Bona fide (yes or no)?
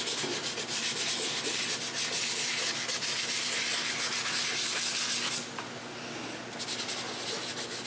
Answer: yes